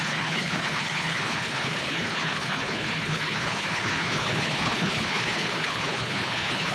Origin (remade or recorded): remade